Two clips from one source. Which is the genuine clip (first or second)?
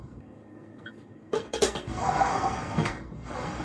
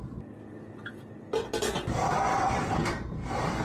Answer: second